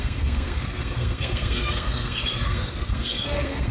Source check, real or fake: fake